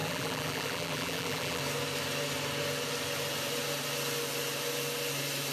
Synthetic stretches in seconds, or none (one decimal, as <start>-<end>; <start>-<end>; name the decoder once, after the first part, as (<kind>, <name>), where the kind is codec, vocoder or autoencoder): 0.0-1.6 (vocoder, BigVGAN v2)